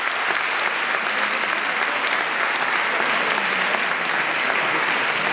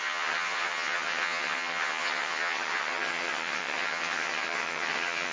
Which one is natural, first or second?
first